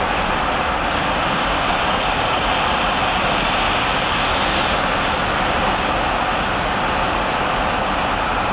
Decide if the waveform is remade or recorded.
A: recorded